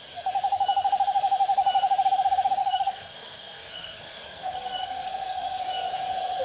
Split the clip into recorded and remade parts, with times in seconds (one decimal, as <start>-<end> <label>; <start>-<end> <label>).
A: 0.0-2.6 recorded; 2.6-5.6 remade; 5.6-6.4 recorded